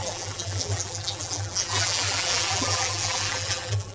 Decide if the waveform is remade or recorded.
remade